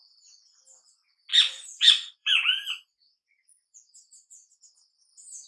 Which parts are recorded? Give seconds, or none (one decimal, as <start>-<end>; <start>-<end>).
0.0-1.3; 4.6-5.5